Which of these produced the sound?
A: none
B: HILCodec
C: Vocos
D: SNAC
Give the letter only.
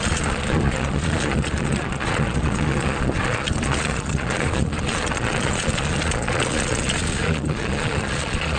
C